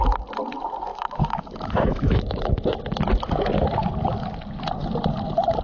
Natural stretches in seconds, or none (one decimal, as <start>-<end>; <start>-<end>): 0.0-0.9; 2.8-5.6